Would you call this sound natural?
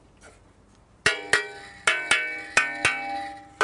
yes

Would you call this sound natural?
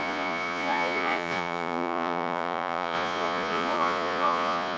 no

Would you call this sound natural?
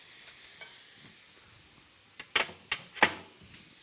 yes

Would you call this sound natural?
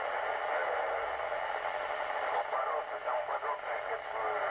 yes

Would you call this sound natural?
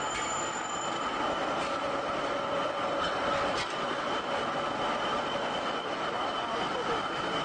yes